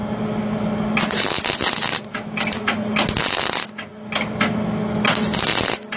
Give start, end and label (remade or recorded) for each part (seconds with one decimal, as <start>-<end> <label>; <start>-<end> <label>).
0.0-6.0 recorded